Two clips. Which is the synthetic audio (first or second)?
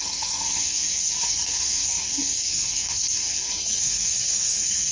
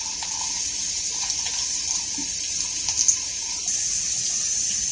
first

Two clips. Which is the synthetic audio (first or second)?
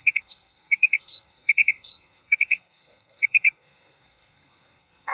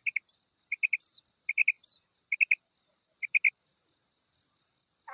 first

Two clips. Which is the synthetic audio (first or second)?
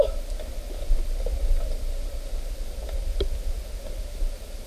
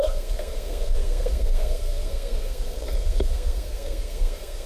second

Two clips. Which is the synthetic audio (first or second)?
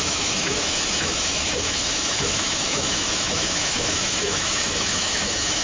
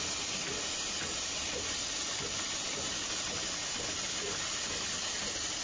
first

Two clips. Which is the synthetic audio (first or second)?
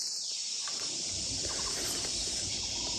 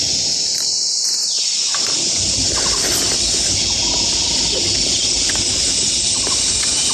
first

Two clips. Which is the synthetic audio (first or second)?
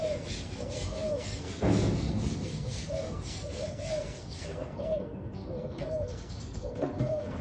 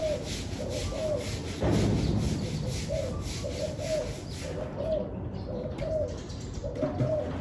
first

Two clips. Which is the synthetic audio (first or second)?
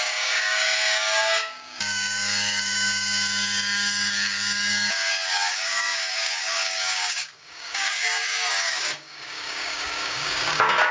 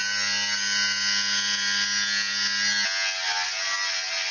first